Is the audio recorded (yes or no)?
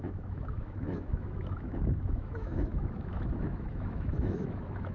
no